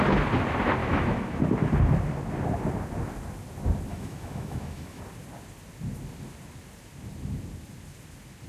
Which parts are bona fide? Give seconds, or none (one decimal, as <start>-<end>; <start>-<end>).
0.0-0.8; 1.4-3.9; 5.0-8.5